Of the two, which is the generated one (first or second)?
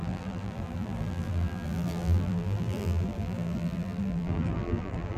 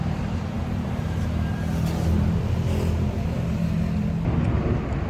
first